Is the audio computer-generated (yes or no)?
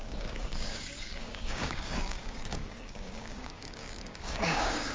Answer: yes